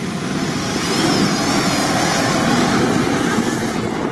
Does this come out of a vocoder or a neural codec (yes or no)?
no